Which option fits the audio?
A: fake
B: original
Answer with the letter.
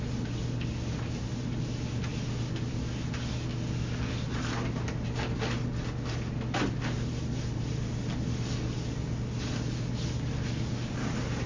B